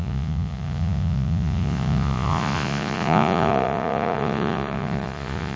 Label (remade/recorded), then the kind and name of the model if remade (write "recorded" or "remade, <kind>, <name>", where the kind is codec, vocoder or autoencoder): remade, vocoder, Vocos